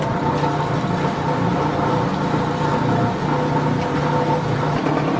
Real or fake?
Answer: real